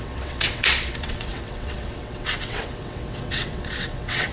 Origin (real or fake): fake